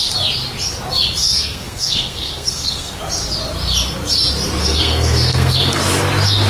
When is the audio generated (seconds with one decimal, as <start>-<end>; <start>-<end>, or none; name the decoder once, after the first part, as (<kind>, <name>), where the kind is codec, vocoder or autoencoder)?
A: 1.2-3.0 (codec, SNAC); 4.6-5.8